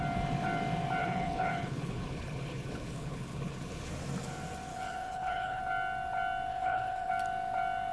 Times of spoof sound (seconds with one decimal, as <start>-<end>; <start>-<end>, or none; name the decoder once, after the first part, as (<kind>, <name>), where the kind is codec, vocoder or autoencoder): 1.0-3.9 (codec, HILCodec); 4.7-5.6; 6.5-7.1